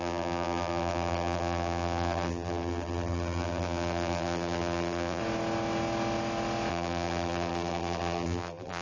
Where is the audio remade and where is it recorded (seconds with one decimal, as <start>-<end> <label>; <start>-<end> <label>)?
0.0-5.2 remade; 5.2-6.7 recorded; 6.7-8.8 remade

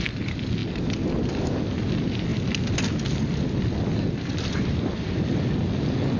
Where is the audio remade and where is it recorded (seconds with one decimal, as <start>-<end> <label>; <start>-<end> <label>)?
0.0-6.2 recorded

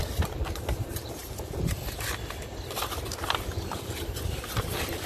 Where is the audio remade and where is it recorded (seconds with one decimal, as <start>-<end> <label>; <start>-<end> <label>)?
0.0-5.1 recorded

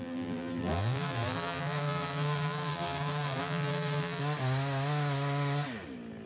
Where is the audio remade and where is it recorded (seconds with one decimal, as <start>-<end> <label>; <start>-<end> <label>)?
0.0-4.2 remade; 4.2-6.3 recorded

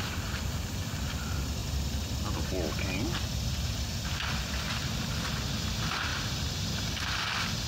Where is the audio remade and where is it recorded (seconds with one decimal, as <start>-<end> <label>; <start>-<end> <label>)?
0.0-7.7 recorded

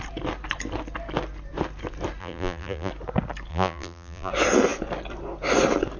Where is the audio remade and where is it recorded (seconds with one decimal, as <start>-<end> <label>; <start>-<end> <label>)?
0.0-2.2 recorded; 2.2-2.9 remade; 2.9-3.5 recorded; 3.5-4.3 remade; 4.3-6.0 recorded

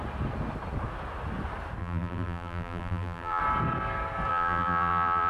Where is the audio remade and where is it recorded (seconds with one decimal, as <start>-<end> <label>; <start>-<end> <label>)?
0.0-1.8 recorded; 1.8-3.4 remade; 3.4-4.3 recorded; 4.3-5.3 remade